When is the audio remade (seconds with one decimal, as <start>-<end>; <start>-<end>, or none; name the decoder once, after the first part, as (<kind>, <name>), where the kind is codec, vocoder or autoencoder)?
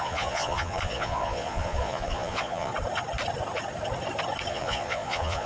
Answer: 0.0-2.7 (vocoder, Vocos); 4.5-5.5